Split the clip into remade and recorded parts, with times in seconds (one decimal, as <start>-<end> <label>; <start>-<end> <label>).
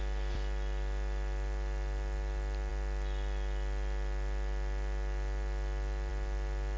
0.0-6.8 recorded